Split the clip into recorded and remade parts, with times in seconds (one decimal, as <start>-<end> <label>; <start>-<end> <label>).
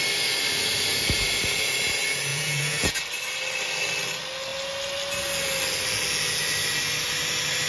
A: 0.0-2.3 recorded; 2.3-3.0 remade; 3.0-7.7 recorded